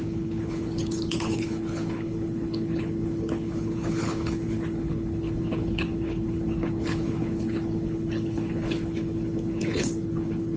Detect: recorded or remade remade